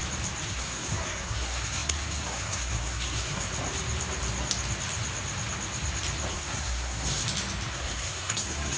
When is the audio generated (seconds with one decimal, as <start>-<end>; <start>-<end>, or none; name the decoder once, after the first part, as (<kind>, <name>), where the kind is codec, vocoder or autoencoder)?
0.5-3.5 (codec, SNAC); 6.3-7.2; 7.7-8.8